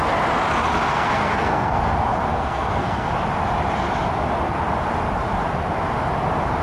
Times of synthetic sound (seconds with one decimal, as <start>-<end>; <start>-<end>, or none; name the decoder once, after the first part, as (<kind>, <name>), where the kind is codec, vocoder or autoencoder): 0.9-1.8 (codec, SNAC); 2.3-3.1